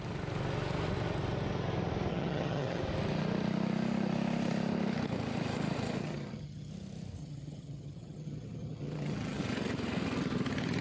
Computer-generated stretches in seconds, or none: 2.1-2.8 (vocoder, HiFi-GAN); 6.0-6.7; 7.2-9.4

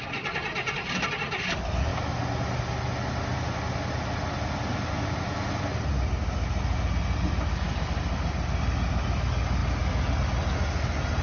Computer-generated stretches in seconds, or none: none